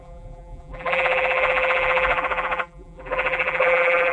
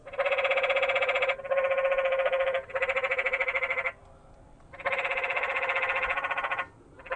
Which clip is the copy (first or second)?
first